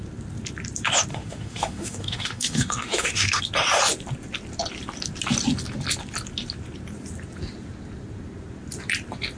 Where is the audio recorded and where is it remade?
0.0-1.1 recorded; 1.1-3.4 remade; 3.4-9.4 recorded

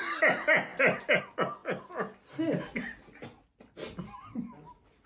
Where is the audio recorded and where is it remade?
0.0-5.1 recorded

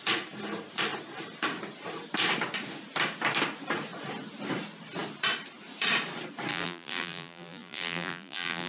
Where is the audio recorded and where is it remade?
0.0-6.5 recorded; 6.5-8.7 remade

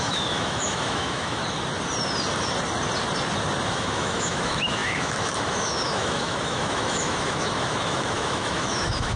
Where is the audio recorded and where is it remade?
0.0-1.4 remade; 1.4-3.7 recorded; 3.7-9.2 remade

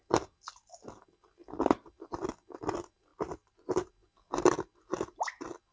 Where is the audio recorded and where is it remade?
0.0-3.1 recorded; 3.1-3.9 remade; 3.9-5.7 recorded

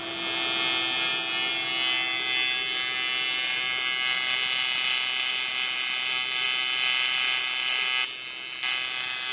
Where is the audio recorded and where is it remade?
0.0-9.3 recorded